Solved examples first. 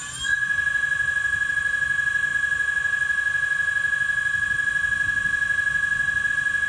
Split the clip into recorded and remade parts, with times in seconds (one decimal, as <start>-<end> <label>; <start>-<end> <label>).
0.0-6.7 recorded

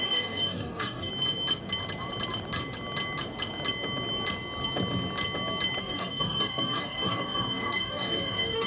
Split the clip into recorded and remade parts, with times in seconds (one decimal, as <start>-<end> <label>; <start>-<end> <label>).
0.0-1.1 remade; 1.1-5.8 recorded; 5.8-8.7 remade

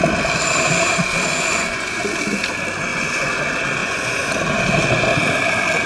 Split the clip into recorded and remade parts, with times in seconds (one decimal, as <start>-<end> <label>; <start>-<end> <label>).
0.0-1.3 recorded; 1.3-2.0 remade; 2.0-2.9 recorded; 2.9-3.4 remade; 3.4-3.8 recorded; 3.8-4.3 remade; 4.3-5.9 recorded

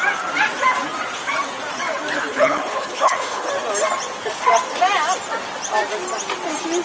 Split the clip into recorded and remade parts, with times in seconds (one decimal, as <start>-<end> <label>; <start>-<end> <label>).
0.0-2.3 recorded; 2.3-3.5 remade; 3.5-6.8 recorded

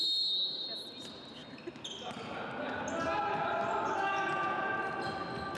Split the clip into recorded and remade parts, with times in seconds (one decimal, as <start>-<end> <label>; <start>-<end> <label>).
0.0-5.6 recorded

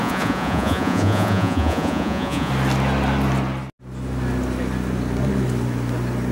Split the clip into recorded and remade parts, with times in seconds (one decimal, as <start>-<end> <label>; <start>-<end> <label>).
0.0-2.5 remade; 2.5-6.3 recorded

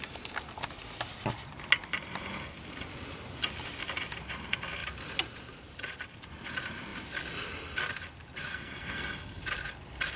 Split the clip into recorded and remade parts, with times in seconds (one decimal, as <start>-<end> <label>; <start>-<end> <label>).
0.0-8.5 recorded; 8.5-9.4 remade; 9.4-10.2 recorded